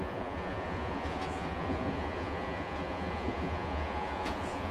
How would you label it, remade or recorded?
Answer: remade